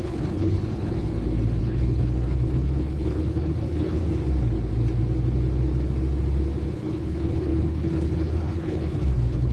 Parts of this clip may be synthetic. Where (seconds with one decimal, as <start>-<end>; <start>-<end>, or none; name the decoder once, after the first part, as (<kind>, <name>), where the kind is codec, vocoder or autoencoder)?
0.0-1.1 (codec, HILCodec); 1.6-4.0; 6.7-9.5

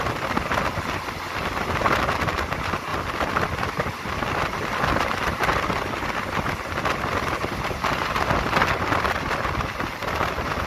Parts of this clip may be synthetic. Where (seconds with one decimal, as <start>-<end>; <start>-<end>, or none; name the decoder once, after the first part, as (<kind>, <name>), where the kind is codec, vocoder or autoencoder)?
none

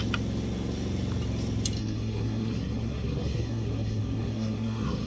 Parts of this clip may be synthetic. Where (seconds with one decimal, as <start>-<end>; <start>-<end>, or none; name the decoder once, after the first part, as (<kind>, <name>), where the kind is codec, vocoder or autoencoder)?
1.8-5.1 (codec, SNAC)

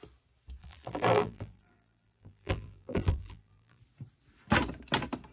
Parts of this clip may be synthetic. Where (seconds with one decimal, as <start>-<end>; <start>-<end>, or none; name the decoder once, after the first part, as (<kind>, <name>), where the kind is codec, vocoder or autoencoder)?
0.6-3.8 (vocoder, BigVGAN v2)

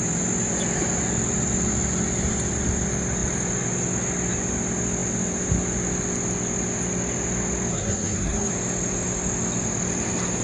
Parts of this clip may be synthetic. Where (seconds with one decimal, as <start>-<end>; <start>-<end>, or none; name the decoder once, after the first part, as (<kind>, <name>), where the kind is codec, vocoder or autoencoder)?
7.7-8.5 (codec, SNAC)

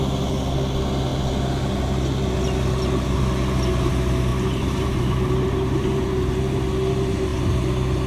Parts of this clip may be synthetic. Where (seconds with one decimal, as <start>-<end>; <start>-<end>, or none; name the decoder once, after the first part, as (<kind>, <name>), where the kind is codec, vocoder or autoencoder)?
4.3-6.4 (vocoder, BigVGAN v2)